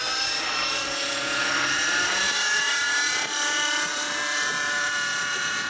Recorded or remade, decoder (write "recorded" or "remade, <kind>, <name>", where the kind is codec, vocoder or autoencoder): recorded